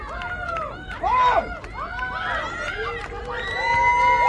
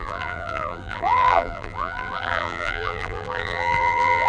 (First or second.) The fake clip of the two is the second